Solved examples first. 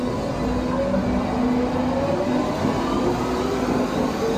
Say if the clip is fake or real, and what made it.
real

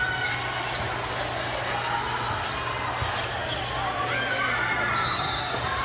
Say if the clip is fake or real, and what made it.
real